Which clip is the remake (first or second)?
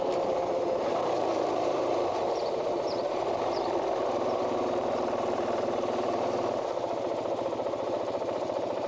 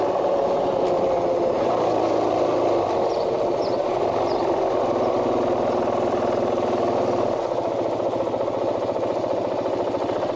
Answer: first